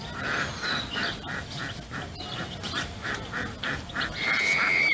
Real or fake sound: real